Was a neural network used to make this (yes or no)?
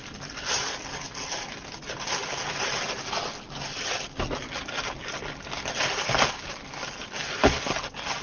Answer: no